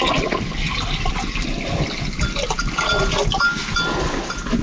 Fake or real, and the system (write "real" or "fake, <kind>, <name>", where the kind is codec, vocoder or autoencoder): real